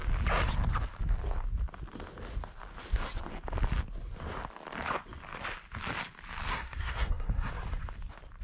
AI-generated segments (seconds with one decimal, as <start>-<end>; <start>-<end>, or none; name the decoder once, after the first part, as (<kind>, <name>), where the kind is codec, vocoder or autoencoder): 6.5-7.5 (codec, SNAC)